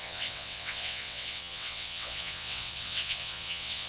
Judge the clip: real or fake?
fake